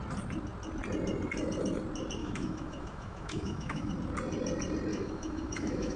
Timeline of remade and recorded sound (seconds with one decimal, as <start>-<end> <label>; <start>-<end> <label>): 0.0-2.2 recorded; 2.2-3.9 remade; 3.9-4.9 recorded; 4.9-6.0 remade